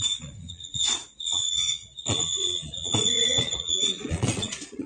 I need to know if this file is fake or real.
fake